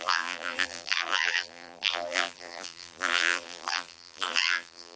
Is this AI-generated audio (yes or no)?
yes